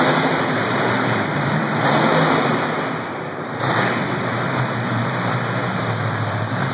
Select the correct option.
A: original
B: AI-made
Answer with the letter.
B